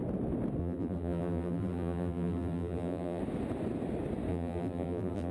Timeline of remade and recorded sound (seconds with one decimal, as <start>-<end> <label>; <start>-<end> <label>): 0.0-0.6 recorded; 0.6-3.2 remade; 3.2-4.3 recorded; 4.3-5.3 remade